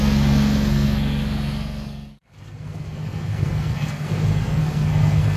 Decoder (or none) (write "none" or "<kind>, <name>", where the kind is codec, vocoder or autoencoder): codec, SNAC